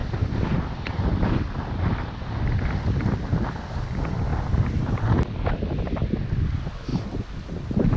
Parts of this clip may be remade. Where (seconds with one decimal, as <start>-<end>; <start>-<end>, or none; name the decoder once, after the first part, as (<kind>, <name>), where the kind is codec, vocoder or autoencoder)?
none